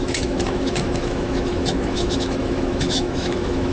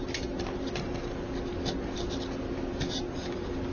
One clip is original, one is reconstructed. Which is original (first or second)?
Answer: second